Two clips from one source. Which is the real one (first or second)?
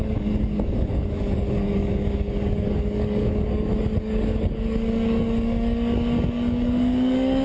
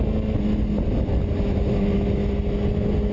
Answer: second